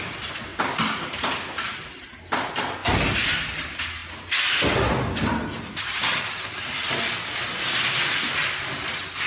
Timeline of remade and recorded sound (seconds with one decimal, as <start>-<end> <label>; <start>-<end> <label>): 0.0-9.3 recorded